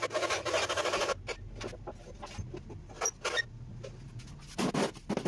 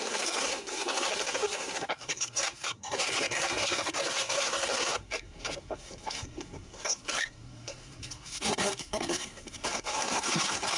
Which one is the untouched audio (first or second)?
first